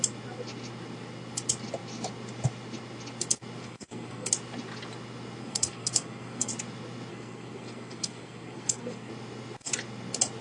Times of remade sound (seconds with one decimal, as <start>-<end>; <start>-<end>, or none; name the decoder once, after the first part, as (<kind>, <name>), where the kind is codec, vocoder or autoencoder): 3.6-4.3 (codec, SNAC); 5.4-6.5; 7.1-9.1